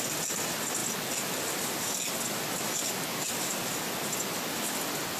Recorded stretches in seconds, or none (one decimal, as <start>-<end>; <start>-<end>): 0.0-5.2